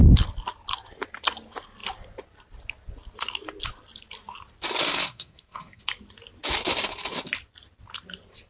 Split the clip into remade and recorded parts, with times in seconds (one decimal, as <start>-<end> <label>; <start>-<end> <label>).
0.0-4.8 recorded; 4.8-5.8 remade; 5.8-8.5 recorded